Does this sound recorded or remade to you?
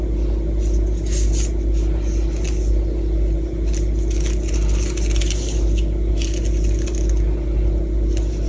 recorded